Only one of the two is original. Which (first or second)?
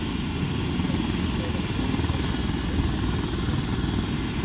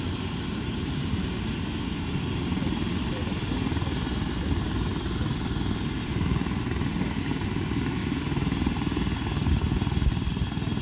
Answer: first